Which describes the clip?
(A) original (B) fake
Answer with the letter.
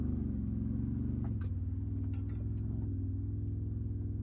A